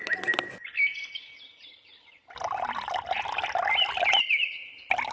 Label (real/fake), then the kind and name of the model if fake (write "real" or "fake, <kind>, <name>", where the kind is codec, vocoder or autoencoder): real